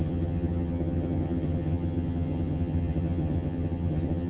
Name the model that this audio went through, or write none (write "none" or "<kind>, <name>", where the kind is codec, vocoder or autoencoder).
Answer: vocoder, HiFi-GAN